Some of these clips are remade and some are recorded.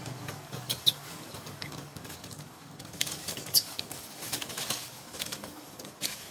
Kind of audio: remade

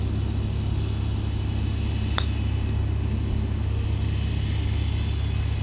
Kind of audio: recorded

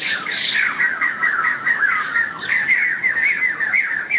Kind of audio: remade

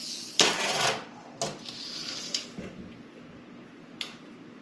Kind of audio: recorded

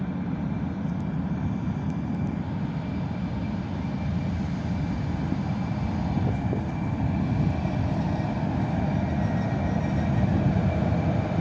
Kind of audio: recorded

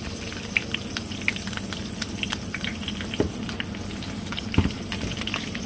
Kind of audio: recorded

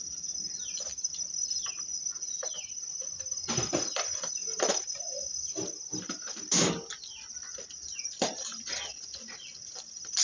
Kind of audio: recorded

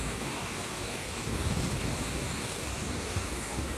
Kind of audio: remade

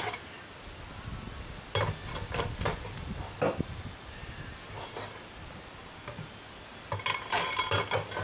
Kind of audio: recorded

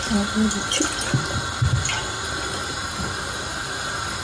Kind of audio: recorded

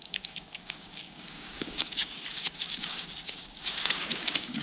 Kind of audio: remade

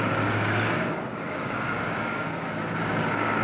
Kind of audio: remade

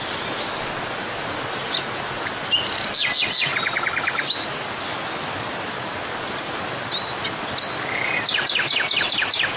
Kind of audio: recorded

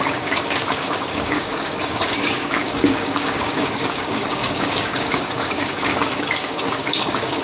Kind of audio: remade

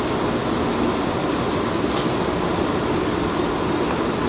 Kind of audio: recorded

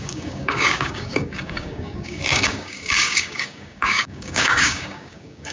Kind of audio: remade